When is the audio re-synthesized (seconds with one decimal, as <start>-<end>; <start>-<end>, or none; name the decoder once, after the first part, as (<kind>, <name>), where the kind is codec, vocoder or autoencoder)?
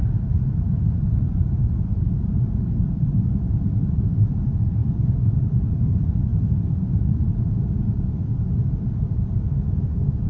0.0-4.8 (vocoder, BigVGAN v2); 5.4-10.3